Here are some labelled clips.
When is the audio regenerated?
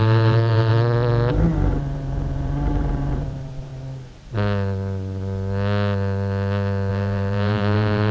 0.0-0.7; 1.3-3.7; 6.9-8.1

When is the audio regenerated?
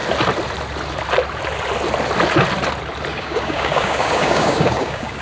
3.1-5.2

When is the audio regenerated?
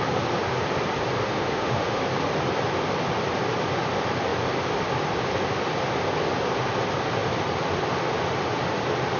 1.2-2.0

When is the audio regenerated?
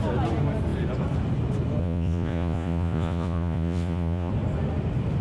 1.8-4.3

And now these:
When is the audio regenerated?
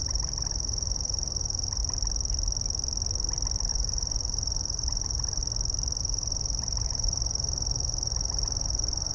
0.0-1.8; 3.7-5.4; 6.0-9.1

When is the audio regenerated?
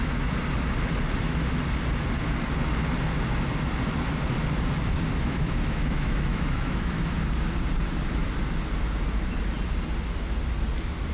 5.1-7.1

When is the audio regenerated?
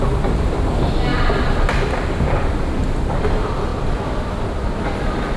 1.1-3.2; 3.7-4.6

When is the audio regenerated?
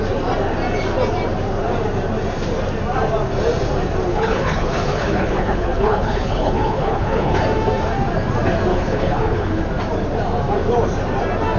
4.1-7.4; 8.7-9.6